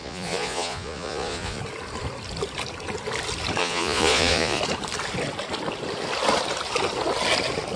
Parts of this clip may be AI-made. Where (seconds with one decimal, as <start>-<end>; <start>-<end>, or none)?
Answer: 0.0-1.6; 3.6-4.6